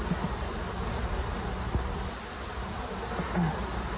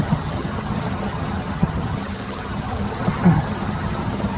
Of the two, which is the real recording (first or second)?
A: first